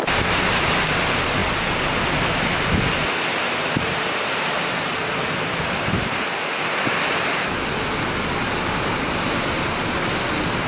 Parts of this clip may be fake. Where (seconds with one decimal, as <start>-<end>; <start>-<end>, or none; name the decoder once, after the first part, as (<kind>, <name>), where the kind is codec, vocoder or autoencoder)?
3.3-6.7 (vocoder, BigVGAN v2)